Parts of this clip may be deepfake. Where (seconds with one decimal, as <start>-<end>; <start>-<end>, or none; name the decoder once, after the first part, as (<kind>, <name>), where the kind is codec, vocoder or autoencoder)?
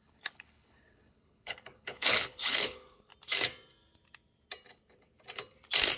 0.0-3.1 (codec, HILCodec)